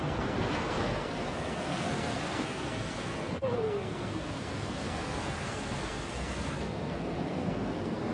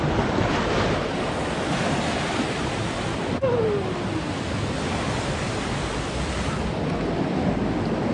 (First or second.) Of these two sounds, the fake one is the first